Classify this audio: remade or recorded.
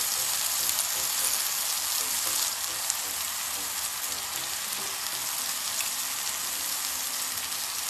recorded